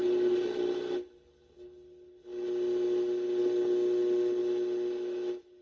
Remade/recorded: recorded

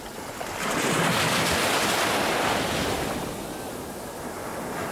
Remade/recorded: recorded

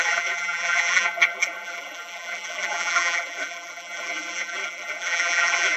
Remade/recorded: remade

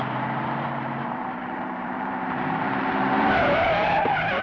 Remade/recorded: remade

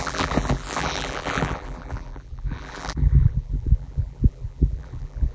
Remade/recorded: remade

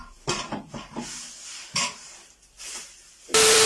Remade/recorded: remade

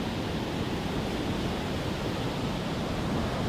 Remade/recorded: recorded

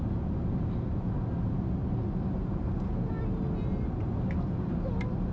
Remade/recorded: recorded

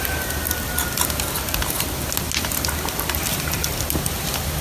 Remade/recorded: recorded